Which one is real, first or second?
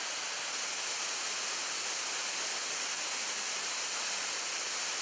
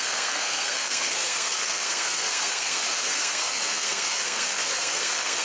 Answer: first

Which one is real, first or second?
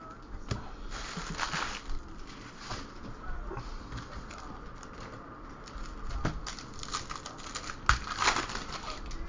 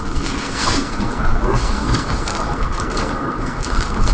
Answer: first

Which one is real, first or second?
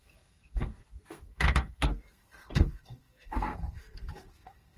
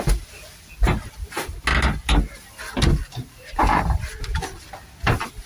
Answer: second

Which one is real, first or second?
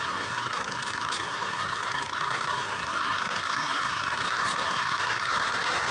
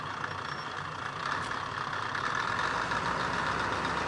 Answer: second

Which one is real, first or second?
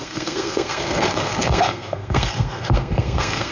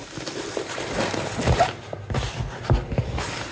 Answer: second